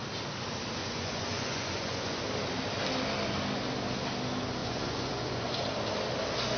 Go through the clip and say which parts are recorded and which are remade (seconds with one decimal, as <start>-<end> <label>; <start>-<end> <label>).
0.0-0.8 recorded; 0.8-2.2 remade; 2.2-4.6 recorded; 4.6-5.5 remade; 5.5-6.6 recorded